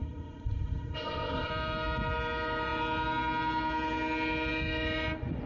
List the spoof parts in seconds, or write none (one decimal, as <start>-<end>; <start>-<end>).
0.0-1.5